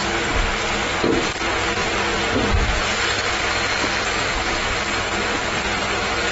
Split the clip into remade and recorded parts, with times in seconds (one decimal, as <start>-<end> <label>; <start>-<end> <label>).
0.0-1.4 remade; 1.4-6.3 recorded